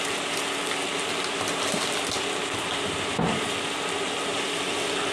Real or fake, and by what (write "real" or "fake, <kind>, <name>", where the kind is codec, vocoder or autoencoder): real